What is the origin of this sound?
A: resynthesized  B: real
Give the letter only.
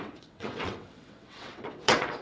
A